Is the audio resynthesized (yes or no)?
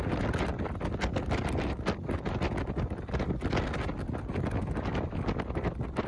no